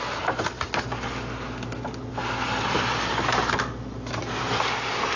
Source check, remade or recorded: recorded